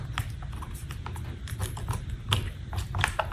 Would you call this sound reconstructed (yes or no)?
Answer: no